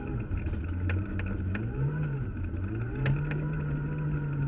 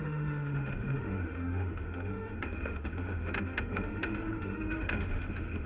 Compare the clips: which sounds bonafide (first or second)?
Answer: first